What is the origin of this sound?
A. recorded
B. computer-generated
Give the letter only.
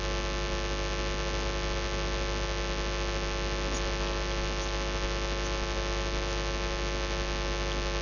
A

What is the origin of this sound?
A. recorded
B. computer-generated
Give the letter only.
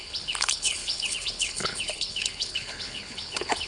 B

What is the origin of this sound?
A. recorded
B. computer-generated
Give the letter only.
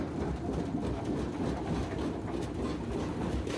A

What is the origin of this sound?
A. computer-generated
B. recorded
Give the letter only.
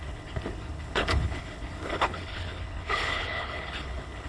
A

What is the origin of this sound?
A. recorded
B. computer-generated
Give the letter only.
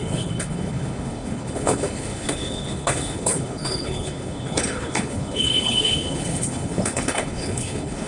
B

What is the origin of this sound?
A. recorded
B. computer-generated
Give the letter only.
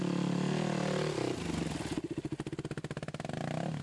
A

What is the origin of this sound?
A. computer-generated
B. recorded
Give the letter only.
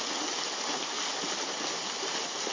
B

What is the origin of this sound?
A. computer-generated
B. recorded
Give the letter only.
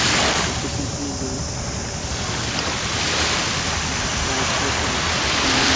B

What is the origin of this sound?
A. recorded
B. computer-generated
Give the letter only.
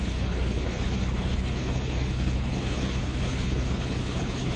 B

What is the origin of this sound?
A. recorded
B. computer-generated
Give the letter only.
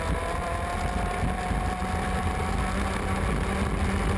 A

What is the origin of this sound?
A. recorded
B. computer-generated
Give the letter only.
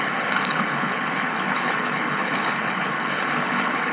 B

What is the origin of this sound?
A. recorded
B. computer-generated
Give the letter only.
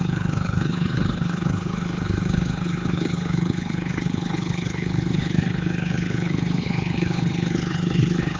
B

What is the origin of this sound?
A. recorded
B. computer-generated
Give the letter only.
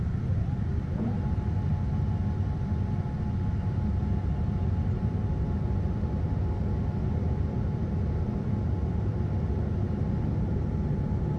A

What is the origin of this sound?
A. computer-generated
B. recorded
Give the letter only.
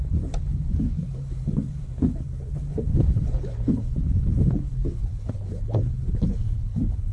A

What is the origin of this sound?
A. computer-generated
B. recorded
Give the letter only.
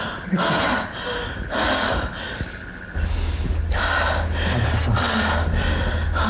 B